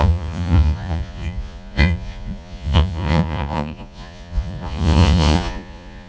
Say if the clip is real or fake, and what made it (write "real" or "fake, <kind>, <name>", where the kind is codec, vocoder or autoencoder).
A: fake, vocoder, Vocos